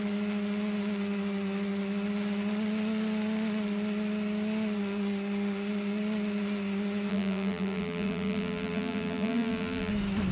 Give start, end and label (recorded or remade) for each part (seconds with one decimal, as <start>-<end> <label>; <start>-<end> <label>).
0.0-7.1 recorded; 7.1-9.9 remade; 9.9-10.3 recorded

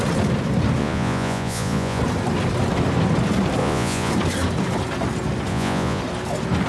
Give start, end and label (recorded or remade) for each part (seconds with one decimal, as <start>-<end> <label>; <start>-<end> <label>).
0.0-0.8 recorded; 0.8-2.0 remade; 2.0-3.6 recorded; 3.6-4.1 remade; 4.1-5.5 recorded; 5.5-6.0 remade; 6.0-6.7 recorded